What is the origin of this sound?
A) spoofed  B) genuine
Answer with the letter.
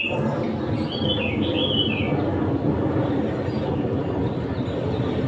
B